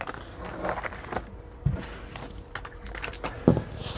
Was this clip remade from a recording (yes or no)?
no